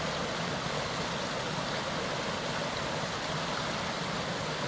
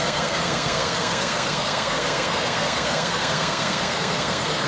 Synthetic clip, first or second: second